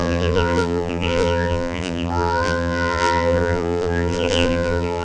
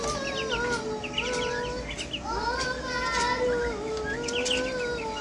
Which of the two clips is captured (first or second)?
second